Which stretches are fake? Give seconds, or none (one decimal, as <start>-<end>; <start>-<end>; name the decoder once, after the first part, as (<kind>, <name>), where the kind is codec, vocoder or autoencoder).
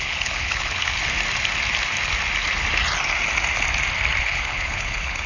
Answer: 0.0-1.0 (codec, HILCodec); 4.2-5.3